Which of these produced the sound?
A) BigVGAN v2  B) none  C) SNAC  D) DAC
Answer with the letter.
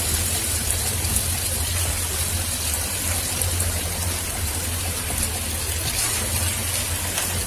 B